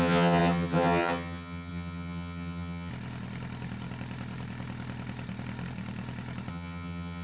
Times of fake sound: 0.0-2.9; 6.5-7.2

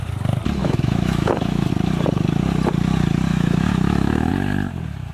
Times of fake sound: 0.6-1.7; 3.3-4.3

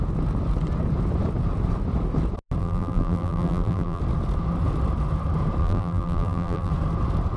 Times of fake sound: 2.6-4.0; 5.6-6.7

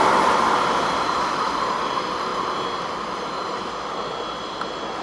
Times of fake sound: none

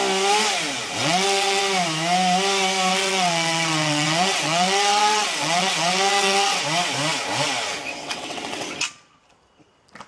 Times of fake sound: 1.0-1.6; 2.9-6.6; 7.9-8.8

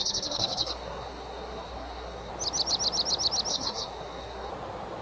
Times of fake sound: 0.0-2.3; 3.5-4.5